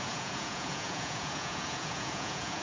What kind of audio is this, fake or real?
fake